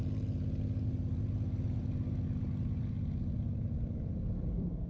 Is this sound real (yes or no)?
yes